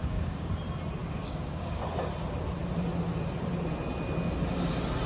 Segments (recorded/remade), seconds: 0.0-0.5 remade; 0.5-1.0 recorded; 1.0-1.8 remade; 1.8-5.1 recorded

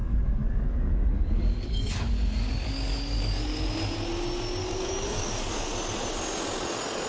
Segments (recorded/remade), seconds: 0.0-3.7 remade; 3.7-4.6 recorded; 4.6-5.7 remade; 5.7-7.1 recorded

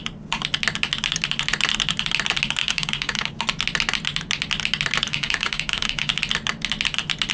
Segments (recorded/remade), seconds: 0.0-2.6 recorded; 2.6-3.3 remade; 3.3-5.1 recorded; 5.1-6.2 remade; 6.2-7.3 recorded

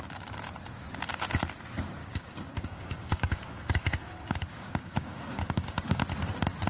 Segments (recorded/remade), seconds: 0.0-2.0 recorded; 2.0-6.0 remade; 6.0-6.7 recorded

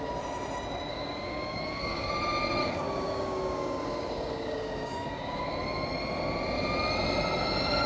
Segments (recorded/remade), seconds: 0.0-0.9 recorded; 0.9-2.1 remade; 2.1-2.6 recorded; 2.6-5.5 remade; 5.5-7.9 recorded

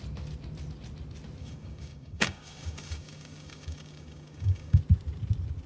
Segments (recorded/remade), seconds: 0.0-1.4 recorded; 1.4-4.8 remade; 4.8-5.7 recorded